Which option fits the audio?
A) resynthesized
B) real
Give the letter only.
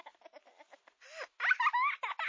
B